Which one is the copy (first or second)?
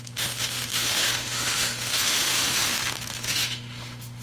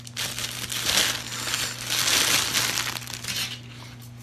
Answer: first